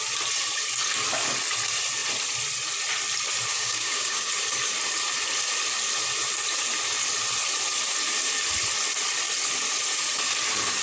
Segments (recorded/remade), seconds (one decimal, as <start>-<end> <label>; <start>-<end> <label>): 0.0-3.5 recorded; 3.5-4.3 remade; 4.3-10.8 recorded